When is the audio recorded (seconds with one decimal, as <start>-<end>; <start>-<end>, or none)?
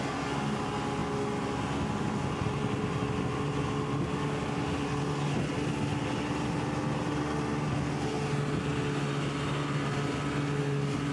0.0-11.1